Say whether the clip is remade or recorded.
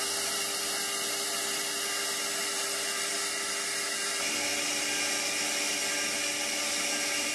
recorded